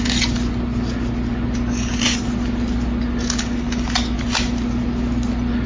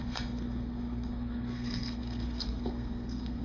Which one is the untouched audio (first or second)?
first